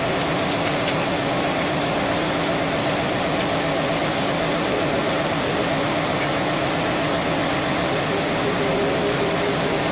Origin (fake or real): real